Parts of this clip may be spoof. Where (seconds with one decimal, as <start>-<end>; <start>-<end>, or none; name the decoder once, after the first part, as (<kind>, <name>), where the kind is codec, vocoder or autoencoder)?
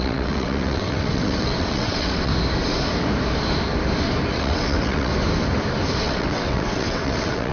0.0-2.3 (vocoder, WaveNeXt); 4.3-5.1; 6.0-7.5